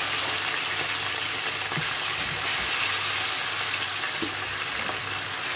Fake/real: real